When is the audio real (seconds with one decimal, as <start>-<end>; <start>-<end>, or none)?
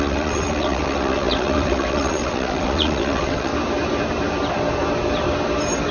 3.5-5.9